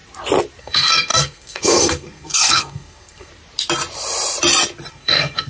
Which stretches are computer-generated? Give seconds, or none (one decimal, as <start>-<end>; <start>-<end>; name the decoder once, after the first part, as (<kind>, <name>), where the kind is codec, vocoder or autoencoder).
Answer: 0.6-3.3 (codec, SNAC); 4.9-5.5